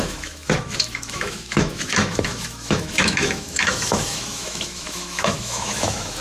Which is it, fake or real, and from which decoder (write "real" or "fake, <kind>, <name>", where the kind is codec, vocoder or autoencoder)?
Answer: fake, autoencoder, DAC-VAE